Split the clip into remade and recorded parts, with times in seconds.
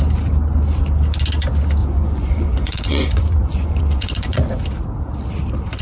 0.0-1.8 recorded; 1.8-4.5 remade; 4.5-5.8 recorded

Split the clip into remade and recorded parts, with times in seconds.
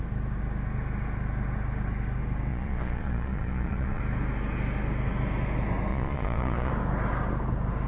0.0-2.5 recorded; 2.5-4.0 remade; 4.0-5.9 recorded; 5.9-6.7 remade; 6.7-7.9 recorded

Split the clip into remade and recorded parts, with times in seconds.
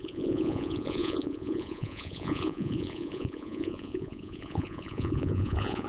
0.0-5.9 remade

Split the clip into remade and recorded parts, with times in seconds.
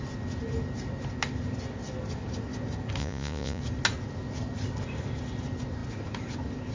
0.0-3.0 recorded; 3.0-3.6 remade; 3.6-6.7 recorded